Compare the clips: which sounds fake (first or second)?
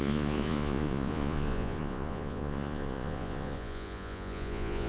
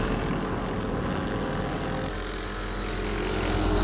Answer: first